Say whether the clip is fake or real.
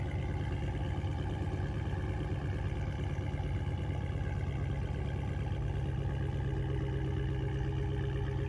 real